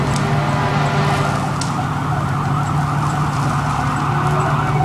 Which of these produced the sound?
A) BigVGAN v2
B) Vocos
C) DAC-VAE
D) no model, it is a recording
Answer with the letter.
D